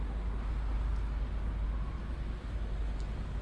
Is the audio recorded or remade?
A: recorded